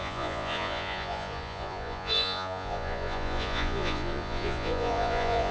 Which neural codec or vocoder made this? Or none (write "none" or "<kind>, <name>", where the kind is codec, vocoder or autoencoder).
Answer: vocoder, Vocos